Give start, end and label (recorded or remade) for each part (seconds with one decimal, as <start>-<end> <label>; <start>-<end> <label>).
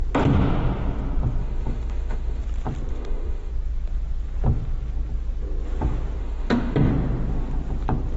0.0-1.4 recorded; 1.4-2.4 remade; 2.4-2.9 recorded; 2.9-3.5 remade; 3.5-6.2 recorded; 6.2-6.9 remade; 6.9-8.2 recorded